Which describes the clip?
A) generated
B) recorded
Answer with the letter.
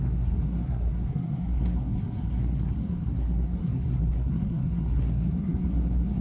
A